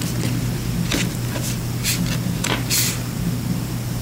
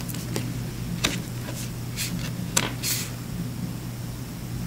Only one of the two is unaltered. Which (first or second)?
second